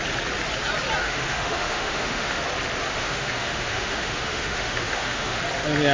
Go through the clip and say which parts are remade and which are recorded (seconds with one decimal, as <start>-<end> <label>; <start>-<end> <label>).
0.0-1.0 recorded; 1.0-2.4 remade; 2.4-2.9 recorded; 2.9-5.4 remade; 5.4-5.9 recorded